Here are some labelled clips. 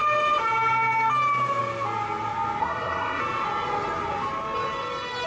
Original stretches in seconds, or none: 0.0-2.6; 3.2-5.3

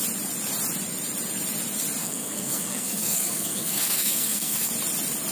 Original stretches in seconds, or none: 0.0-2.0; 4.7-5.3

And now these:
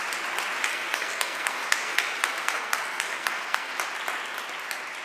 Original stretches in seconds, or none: 0.0-0.7; 3.7-5.0

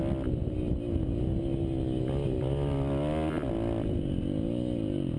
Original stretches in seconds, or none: 0.0-5.2